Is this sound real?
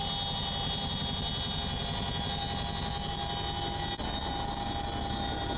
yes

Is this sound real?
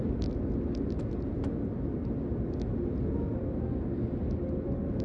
yes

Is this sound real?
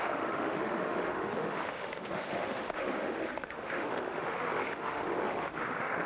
no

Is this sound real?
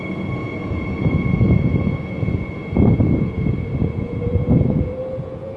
no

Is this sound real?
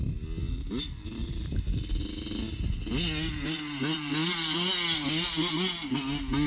yes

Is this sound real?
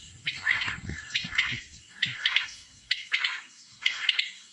no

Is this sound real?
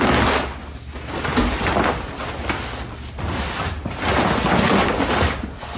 yes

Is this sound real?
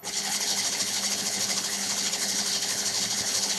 no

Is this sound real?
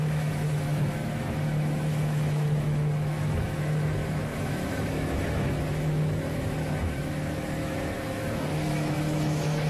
no